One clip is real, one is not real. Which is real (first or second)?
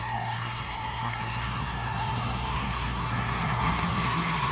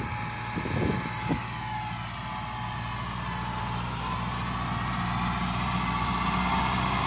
second